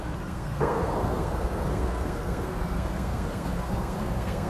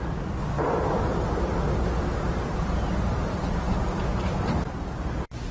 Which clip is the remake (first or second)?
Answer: first